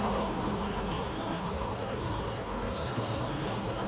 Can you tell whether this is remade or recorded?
remade